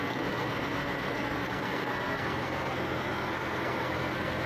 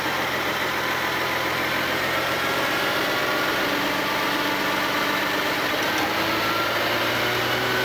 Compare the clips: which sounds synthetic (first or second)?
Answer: first